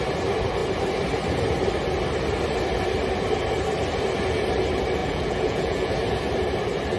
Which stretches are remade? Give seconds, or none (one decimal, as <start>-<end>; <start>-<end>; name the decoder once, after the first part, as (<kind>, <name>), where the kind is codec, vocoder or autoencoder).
5.0-5.9 (vocoder, Vocos)